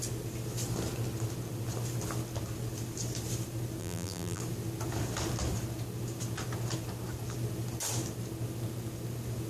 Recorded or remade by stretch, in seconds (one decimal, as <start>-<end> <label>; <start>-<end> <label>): 0.0-3.8 recorded; 3.8-4.4 remade; 4.4-9.5 recorded